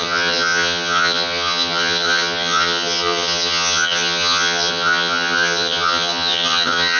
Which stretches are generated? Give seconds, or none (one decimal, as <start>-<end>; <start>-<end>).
0.0-7.0